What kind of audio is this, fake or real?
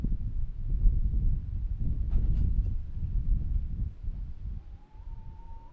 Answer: real